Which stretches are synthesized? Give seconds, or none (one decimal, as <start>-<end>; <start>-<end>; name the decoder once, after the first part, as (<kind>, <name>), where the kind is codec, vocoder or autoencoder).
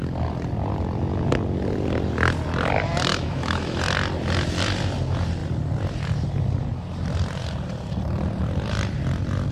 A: 3.1-3.8 (autoencoder, DAC-VAE)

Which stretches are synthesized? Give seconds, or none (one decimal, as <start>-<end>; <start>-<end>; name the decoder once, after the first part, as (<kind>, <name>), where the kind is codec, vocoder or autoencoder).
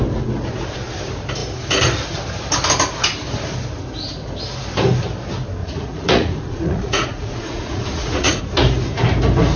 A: 5.6-8.4 (vocoder, Vocos)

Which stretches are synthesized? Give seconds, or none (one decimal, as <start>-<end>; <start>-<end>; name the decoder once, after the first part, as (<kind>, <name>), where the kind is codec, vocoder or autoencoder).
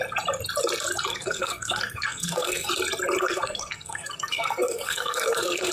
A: 1.1-2.7 (codec, SNAC); 3.2-5.7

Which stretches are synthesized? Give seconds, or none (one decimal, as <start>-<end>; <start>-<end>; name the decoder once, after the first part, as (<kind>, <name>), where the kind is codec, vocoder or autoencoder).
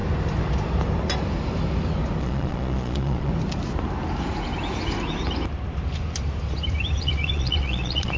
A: 2.2-3.3 (vocoder, Vocos); 7.0-8.2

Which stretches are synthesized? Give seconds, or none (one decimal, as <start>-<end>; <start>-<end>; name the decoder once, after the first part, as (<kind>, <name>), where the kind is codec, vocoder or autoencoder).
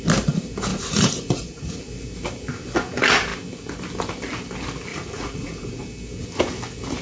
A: 0.7-1.8 (vocoder, Vocos); 4.9-5.8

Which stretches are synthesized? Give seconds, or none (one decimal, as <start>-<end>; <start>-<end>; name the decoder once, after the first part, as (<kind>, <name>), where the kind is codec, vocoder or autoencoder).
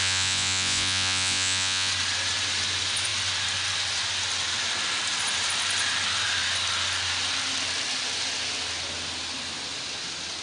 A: 0.0-1.9 (vocoder, Vocos)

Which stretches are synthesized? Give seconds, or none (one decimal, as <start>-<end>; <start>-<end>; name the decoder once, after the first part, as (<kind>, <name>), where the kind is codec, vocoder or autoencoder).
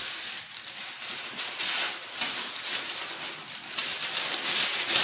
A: none